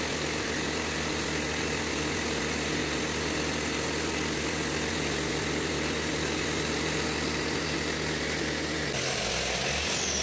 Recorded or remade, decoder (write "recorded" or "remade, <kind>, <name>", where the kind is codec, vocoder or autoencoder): recorded